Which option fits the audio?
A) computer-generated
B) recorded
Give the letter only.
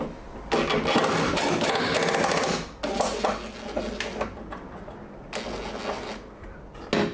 B